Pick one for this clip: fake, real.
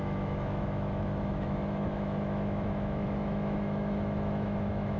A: fake